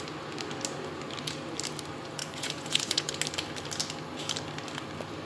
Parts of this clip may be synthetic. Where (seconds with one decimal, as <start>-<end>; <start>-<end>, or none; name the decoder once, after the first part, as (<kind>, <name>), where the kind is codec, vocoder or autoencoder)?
2.2-3.1 (vocoder, Vocos)